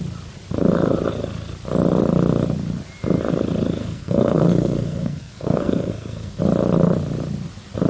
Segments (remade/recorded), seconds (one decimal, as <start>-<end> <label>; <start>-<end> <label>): 0.0-3.8 recorded; 3.8-6.4 remade; 6.4-7.9 recorded

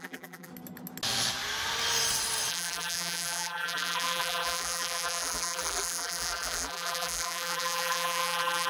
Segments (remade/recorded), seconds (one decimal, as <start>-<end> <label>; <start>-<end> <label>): 0.0-0.5 remade; 0.5-2.5 recorded; 2.5-8.7 remade